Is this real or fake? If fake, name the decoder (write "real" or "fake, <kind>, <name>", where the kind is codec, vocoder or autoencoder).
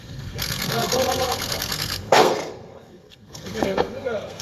fake, codec, SNAC